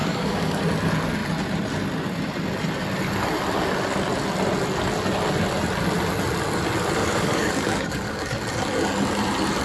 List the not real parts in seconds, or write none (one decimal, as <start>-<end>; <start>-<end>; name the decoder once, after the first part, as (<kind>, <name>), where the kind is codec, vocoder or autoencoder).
0.0-0.6 (codec, DAC); 7.0-8.4